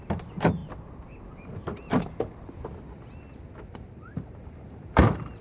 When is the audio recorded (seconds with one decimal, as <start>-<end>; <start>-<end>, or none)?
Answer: 0.6-3.7